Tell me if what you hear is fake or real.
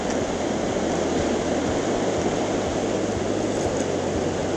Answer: real